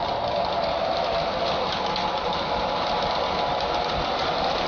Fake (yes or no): no